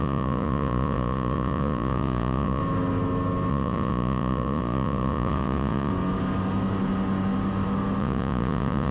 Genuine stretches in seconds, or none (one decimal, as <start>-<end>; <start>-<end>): 2.6-3.5; 5.9-8.0